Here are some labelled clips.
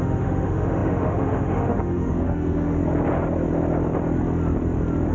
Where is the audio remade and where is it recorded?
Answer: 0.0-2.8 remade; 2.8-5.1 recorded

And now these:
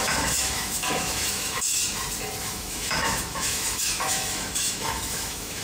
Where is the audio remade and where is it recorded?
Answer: 0.0-1.8 remade; 1.8-2.4 recorded; 2.4-5.6 remade

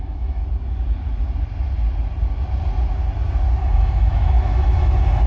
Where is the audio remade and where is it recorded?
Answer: 0.0-0.4 remade; 0.4-3.6 recorded; 3.6-5.3 remade

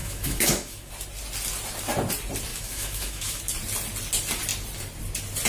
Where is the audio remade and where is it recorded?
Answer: 0.0-0.9 remade; 0.9-2.5 recorded; 2.5-3.4 remade; 3.4-5.5 recorded